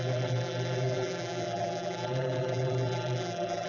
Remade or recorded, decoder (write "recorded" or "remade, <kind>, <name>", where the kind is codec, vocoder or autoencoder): remade, vocoder, BigVGAN v2